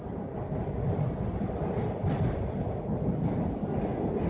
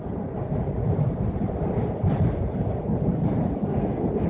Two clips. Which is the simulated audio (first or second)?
second